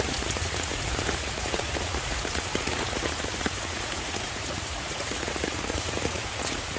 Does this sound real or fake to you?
fake